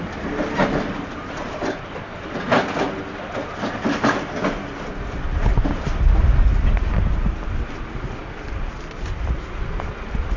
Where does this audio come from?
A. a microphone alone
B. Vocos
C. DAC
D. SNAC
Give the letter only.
A